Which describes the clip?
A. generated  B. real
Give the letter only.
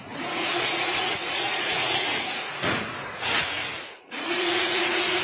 A